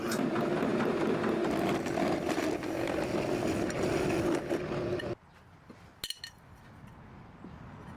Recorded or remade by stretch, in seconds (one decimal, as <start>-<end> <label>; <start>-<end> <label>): 0.0-8.0 recorded